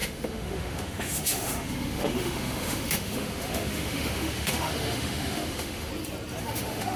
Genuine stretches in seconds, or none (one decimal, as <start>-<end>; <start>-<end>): 5.9-6.4